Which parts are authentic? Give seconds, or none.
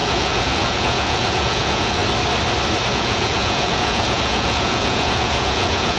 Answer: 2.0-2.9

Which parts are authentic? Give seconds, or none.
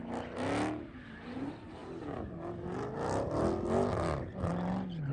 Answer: 0.0-5.1